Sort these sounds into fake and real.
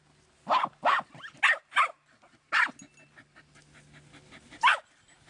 real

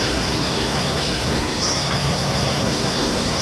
fake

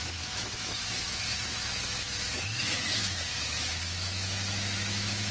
fake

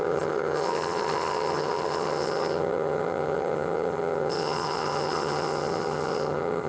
fake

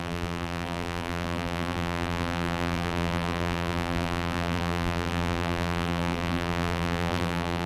fake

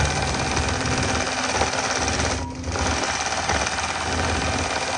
real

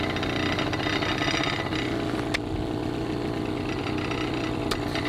real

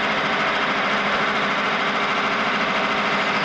real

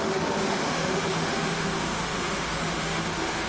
fake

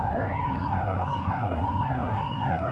fake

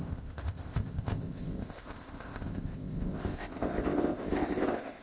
fake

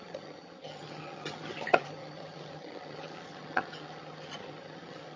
fake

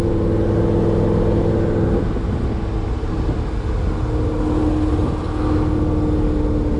real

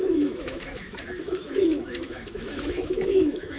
fake